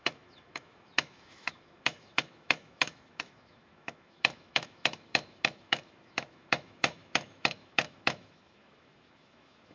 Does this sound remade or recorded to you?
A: remade